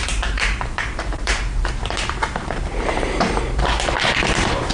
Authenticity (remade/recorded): remade